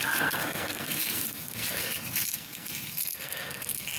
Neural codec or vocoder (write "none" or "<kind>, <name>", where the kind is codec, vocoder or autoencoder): codec, SNAC